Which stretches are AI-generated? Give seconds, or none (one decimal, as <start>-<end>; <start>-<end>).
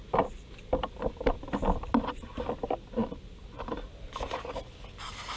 none